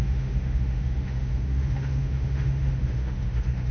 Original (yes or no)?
no